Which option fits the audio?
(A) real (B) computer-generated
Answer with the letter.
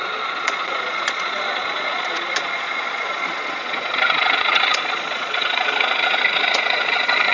B